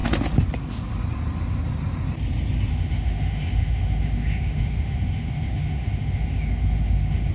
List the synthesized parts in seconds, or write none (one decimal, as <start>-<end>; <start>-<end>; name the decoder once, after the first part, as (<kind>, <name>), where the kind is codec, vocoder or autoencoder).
2.7-7.3 (autoencoder, DAC-VAE)